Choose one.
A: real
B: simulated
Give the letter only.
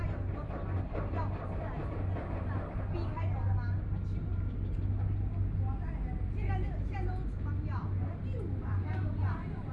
A